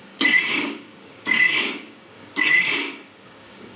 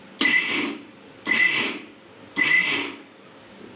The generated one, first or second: first